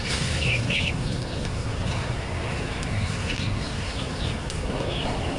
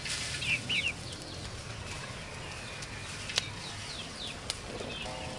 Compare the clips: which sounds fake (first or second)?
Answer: first